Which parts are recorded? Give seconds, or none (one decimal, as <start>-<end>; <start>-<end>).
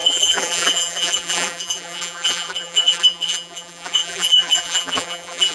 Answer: none